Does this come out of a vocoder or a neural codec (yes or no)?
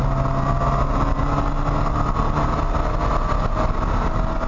no